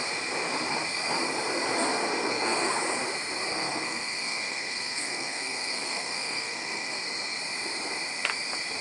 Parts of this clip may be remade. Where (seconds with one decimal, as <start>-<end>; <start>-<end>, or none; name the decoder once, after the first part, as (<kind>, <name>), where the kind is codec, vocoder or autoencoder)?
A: 2.2-2.7 (codec, SNAC); 3.5-7.0